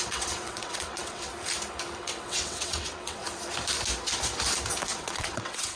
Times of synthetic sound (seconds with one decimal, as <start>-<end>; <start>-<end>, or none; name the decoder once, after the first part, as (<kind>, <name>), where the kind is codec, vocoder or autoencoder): 0.0-1.3 (vocoder, WaveNeXt); 2.0-3.2; 5.0-5.8